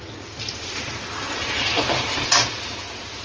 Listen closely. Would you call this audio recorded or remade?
recorded